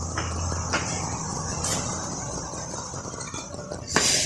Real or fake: real